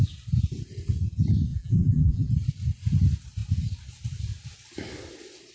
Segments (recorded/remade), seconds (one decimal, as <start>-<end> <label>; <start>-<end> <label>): 0.0-1.5 recorded; 1.5-2.3 remade; 2.3-5.5 recorded